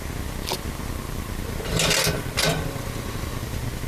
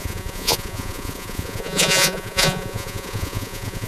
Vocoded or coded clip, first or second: second